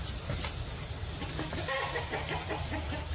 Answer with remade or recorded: recorded